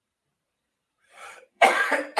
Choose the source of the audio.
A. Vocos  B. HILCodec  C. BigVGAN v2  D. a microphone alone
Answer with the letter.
C